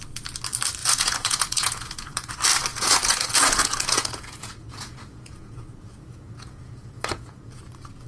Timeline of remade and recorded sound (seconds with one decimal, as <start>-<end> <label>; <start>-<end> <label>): 0.0-0.8 recorded; 0.8-2.3 remade; 2.3-2.7 recorded; 2.7-7.6 remade; 7.6-8.1 recorded